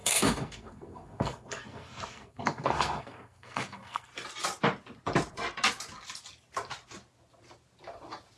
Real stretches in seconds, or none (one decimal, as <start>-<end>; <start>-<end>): 4.1-8.4